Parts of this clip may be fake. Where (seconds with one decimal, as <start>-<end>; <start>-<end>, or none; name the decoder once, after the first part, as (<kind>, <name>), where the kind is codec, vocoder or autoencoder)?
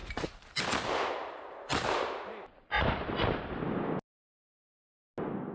0.0-0.6 (vocoder, BigVGAN v2); 1.2-3.6